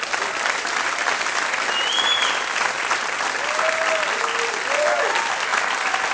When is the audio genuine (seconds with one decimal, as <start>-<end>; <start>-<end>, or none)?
0.0-6.1